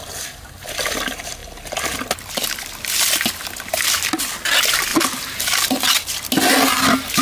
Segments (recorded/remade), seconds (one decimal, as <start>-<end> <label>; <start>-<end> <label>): 0.0-7.2 recorded